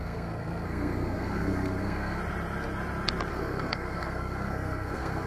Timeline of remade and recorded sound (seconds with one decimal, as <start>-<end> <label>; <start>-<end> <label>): 0.0-2.2 remade; 2.2-3.3 recorded; 3.3-5.3 remade